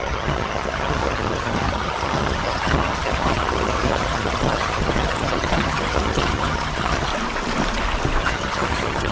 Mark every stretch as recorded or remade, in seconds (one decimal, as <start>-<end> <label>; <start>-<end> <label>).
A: 0.0-7.1 remade; 7.1-8.2 recorded; 8.2-9.1 remade